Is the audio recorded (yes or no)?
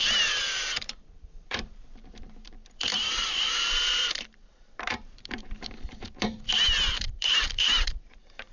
no